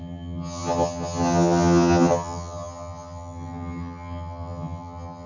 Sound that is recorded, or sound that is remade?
remade